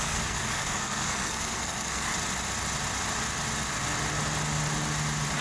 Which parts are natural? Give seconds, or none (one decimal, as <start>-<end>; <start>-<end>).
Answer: 2.1-5.4